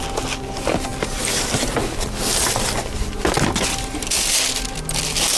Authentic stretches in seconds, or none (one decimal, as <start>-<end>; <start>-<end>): 0.0-5.4